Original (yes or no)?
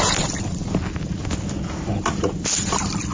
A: yes